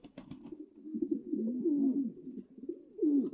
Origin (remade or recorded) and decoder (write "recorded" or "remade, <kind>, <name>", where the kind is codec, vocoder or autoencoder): recorded